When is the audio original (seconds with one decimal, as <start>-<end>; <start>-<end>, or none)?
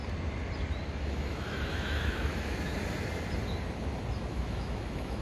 0.0-1.0; 2.7-4.3